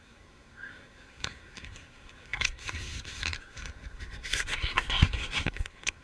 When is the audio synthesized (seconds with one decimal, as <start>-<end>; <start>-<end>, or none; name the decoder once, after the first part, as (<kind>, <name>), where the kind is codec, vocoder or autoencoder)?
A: 0.0-6.0 (codec, SNAC)